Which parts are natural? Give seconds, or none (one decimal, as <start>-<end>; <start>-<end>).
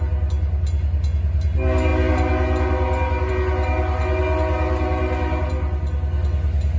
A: 0.0-6.8